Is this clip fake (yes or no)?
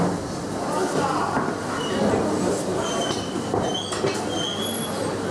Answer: no